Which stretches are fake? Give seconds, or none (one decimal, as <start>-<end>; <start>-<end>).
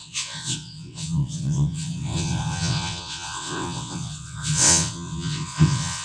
0.0-6.0